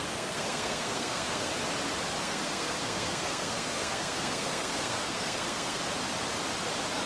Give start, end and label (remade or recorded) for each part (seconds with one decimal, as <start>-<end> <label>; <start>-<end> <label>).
0.0-1.5 remade; 1.5-2.2 recorded; 2.2-5.8 remade; 5.8-7.1 recorded

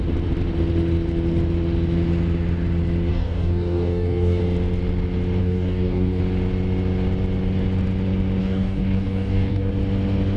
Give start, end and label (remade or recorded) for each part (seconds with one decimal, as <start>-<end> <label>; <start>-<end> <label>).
0.0-3.1 recorded; 3.1-4.4 remade; 4.4-5.4 recorded; 5.4-6.2 remade; 6.2-8.4 recorded; 8.4-9.7 remade; 9.7-10.4 recorded